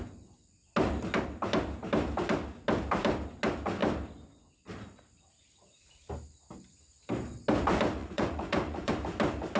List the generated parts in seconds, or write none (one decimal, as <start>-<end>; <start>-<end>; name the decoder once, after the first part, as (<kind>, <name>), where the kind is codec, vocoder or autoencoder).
8.0-8.9 (vocoder, Vocos)